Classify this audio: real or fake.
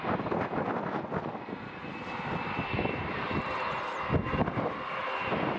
real